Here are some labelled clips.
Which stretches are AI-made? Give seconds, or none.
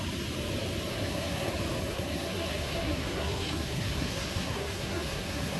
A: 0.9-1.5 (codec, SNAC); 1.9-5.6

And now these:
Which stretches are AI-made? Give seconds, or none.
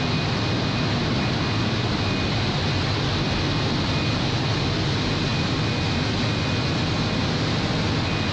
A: none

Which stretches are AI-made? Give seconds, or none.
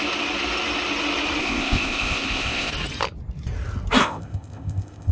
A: 1.4-2.7 (codec, ZipCodec); 4.0-5.1